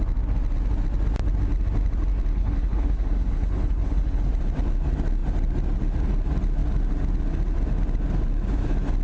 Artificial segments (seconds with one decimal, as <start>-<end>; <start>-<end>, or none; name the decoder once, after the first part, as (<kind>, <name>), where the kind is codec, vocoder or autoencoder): 2.3-4.3 (codec, HILCodec)